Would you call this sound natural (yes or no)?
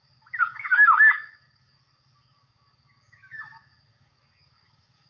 no